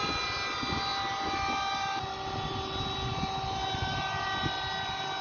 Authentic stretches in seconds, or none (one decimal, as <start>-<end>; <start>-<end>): 0.0-5.2